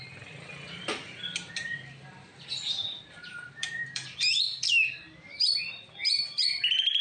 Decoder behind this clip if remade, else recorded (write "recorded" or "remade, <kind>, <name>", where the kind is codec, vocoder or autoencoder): remade, vocoder, BigVGAN v2